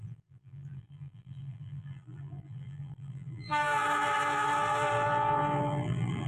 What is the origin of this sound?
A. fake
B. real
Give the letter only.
A